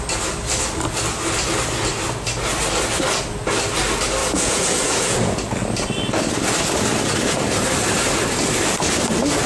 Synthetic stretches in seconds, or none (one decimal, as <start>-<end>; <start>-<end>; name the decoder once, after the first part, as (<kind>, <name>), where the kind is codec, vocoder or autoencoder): 4.2-5.4 (vocoder, Vocos)